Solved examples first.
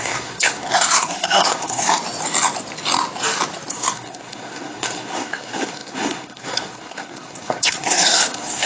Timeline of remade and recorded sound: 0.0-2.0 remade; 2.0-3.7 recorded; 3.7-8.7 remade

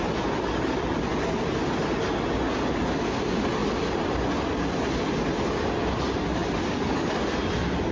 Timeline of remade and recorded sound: 0.0-7.9 recorded

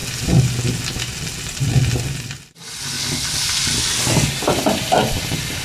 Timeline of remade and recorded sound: 0.0-5.6 recorded

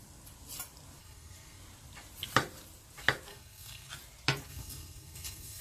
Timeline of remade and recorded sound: 0.0-1.0 recorded; 1.0-1.6 remade; 1.6-3.3 recorded; 3.3-3.9 remade; 3.9-4.5 recorded; 4.5-5.6 remade

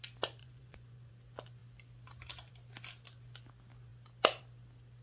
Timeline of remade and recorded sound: 0.0-0.4 recorded; 0.4-1.1 remade; 1.1-5.0 recorded

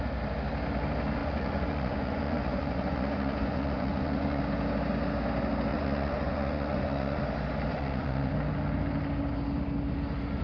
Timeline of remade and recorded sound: 0.0-1.2 recorded; 1.2-4.4 remade; 4.4-5.7 recorded; 5.7-7.2 remade; 7.2-7.7 recorded; 7.7-8.3 remade; 8.3-10.4 recorded

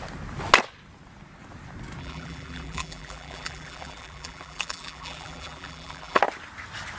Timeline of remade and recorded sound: 0.0-2.0 recorded; 2.0-6.2 remade; 6.2-7.0 recorded

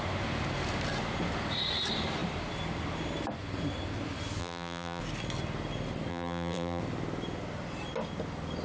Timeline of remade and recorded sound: 0.0-4.4 recorded; 4.4-5.0 remade; 5.0-6.1 recorded; 6.1-6.8 remade; 6.8-8.6 recorded